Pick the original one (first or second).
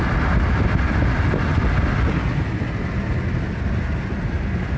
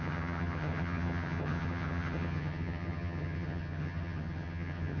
first